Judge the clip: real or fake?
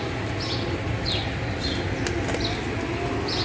real